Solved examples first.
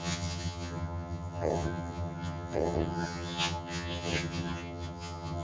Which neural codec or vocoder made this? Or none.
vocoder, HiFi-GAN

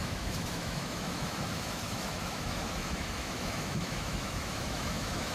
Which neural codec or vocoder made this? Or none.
autoencoder, DAC-VAE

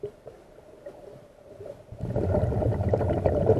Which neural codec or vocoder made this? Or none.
none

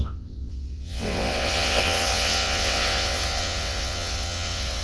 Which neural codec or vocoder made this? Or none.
vocoder, WaveNeXt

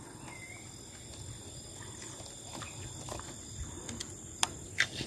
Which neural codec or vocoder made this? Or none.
none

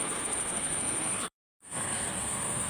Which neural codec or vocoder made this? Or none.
codec, SNAC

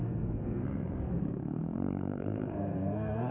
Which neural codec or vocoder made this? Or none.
codec, SNAC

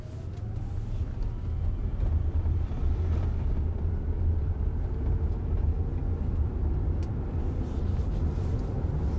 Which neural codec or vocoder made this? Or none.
none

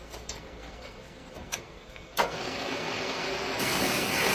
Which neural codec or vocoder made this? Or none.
codec, SNAC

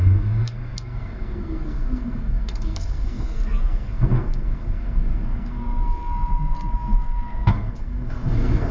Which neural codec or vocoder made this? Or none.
codec, SNAC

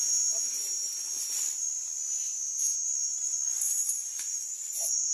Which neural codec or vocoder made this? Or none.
none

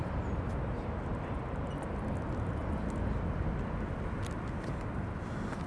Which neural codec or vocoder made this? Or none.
none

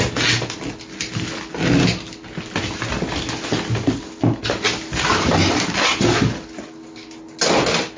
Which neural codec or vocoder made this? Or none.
none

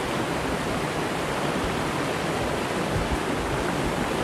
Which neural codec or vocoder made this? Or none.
none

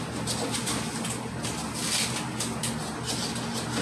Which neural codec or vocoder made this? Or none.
none